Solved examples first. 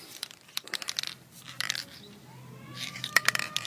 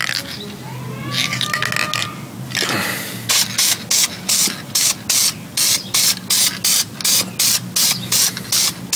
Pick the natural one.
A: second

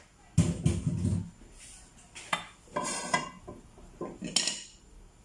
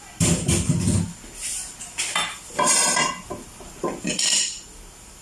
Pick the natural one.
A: first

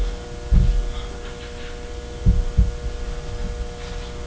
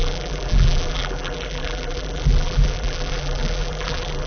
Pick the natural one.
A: first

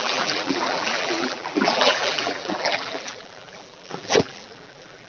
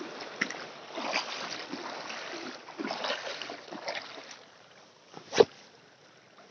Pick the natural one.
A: second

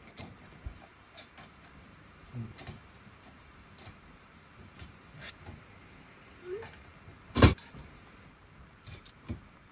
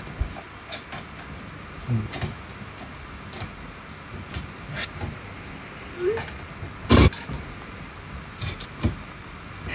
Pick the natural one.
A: second